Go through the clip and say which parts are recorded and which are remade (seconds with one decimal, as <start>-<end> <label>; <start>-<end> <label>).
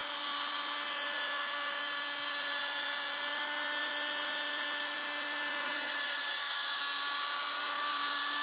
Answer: 0.0-5.6 recorded; 5.6-6.8 remade; 6.8-8.4 recorded